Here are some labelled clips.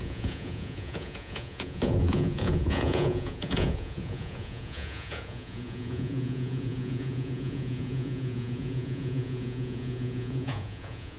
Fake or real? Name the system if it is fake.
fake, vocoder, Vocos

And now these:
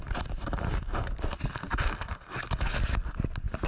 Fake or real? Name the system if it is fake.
real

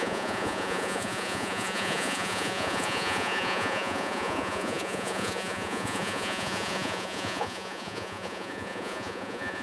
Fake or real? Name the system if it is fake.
fake, vocoder, Vocos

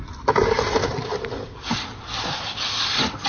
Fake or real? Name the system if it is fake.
real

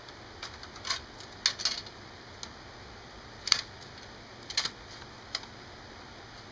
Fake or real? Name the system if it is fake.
real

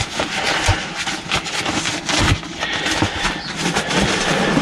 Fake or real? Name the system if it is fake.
real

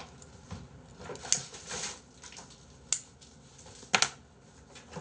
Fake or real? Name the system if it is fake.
real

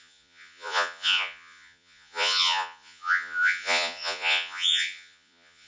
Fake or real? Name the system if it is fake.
fake, vocoder, Vocos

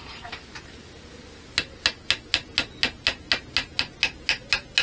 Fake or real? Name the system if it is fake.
real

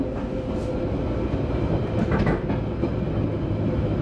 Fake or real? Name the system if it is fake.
real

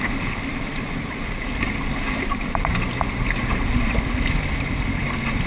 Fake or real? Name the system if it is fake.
real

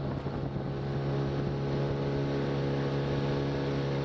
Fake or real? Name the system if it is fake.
real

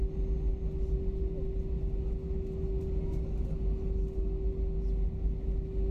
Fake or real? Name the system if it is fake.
real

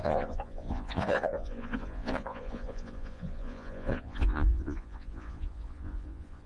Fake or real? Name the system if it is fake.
fake, vocoder, Vocos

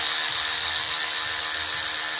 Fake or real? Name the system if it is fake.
real